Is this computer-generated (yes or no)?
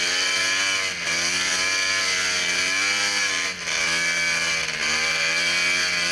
no